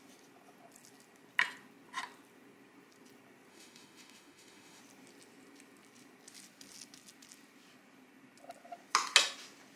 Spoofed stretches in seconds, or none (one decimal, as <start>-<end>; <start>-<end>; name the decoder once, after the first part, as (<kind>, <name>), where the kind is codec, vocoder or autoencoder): 3.5-4.8 (autoencoder, DAC-VAE)

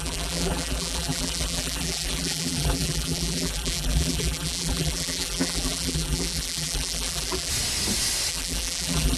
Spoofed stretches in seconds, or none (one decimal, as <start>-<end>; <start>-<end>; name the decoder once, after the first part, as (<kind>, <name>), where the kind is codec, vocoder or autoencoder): 0.0-7.5 (vocoder, BigVGAN v2); 8.3-9.2